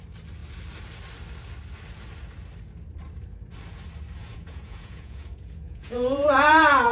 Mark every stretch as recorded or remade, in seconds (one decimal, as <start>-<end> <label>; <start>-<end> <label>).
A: 0.0-4.2 recorded; 4.2-6.9 remade